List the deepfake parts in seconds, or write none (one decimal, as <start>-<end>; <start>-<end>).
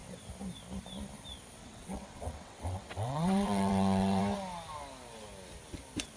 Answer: 1.6-4.2